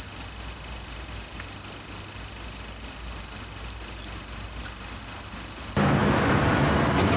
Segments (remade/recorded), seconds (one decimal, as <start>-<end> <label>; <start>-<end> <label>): 0.0-7.2 recorded